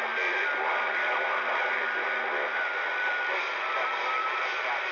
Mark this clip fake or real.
real